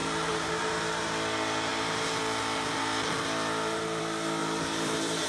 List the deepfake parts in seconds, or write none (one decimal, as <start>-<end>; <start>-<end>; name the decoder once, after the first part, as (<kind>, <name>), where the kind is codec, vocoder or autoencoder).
0.0-0.7 (vocoder, BigVGAN v2); 4.4-5.3